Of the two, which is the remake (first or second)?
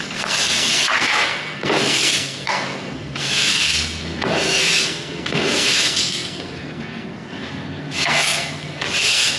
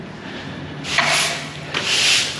first